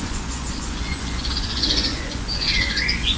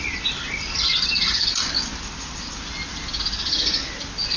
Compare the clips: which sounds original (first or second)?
second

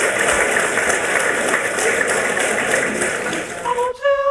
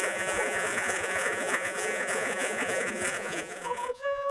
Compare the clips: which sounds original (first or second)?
first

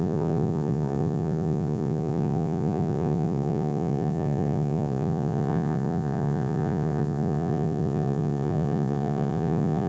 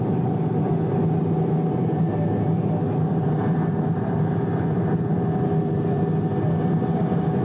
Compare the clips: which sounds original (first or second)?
second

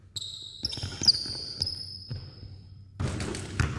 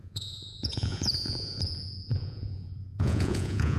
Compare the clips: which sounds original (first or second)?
first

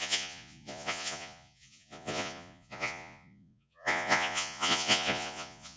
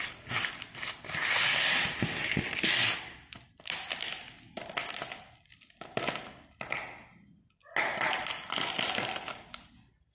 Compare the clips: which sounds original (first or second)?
second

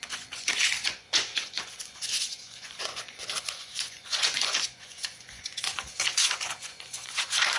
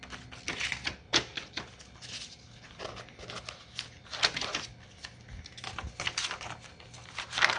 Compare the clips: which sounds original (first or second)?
second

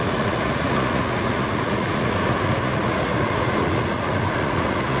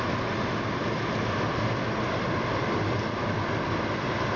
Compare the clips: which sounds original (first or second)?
second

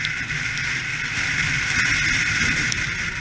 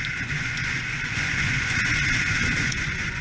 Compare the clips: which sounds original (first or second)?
first